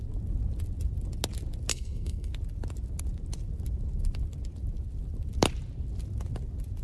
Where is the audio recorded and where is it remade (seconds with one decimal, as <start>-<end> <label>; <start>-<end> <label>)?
0.0-1.7 recorded; 1.7-2.3 remade; 2.3-6.8 recorded